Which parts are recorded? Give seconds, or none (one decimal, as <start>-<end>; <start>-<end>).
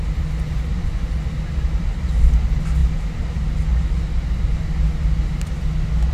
0.0-6.1